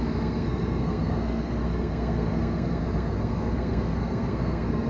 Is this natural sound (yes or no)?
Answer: no